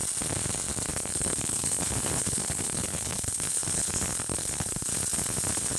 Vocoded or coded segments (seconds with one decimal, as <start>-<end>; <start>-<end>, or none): 0.9-4.9